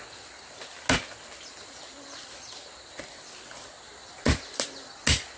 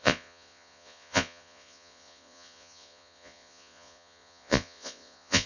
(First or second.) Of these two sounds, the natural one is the first